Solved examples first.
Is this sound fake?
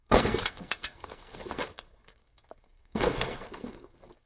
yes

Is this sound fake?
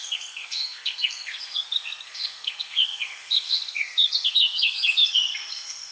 yes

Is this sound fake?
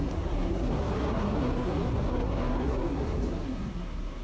yes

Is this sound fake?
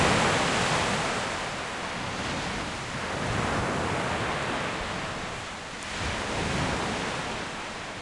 no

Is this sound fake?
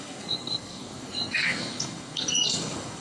yes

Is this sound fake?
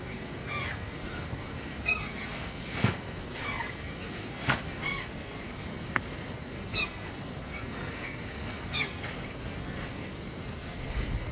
yes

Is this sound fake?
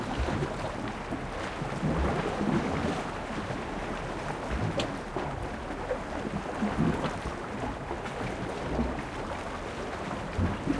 no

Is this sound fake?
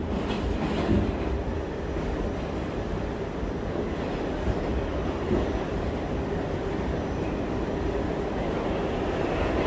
no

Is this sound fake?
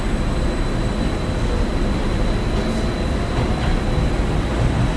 no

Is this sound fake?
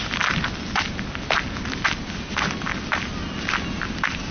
no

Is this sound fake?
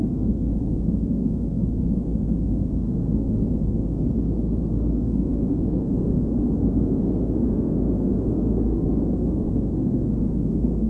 yes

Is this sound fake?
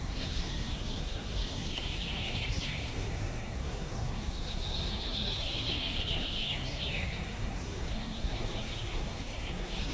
yes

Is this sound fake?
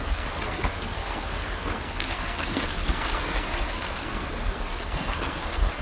yes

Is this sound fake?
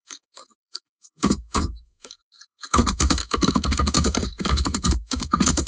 yes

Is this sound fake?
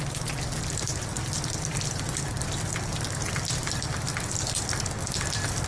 no